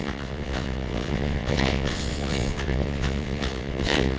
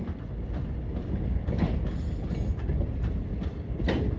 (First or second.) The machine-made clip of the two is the first